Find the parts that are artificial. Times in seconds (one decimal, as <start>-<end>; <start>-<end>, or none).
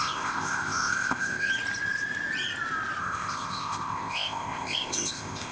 0.0-1.5; 3.0-5.5